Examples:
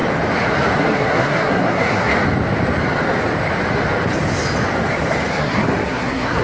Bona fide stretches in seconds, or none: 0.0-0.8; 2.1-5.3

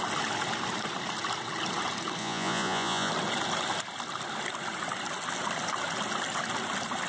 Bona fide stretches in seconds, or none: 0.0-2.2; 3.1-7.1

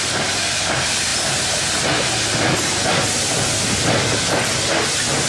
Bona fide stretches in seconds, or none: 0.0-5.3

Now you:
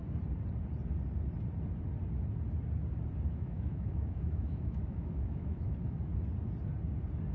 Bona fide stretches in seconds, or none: 0.0-3.3; 6.1-7.3